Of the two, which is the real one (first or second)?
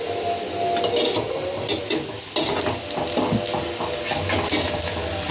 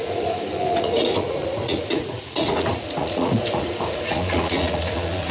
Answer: first